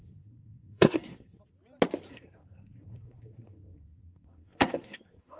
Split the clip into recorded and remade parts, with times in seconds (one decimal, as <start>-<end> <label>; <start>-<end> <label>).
0.0-1.4 remade; 1.4-2.1 recorded; 2.1-5.4 remade